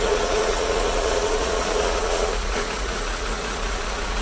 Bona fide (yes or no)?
no